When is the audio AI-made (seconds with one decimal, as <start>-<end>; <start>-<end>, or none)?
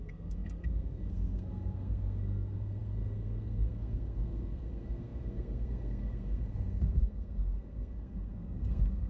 0.0-9.1